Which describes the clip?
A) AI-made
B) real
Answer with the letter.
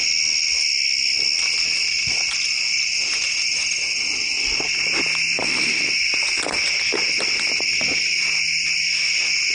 B